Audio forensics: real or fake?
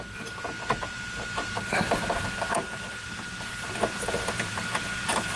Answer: real